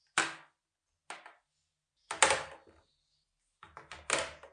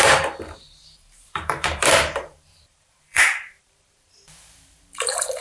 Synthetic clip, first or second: second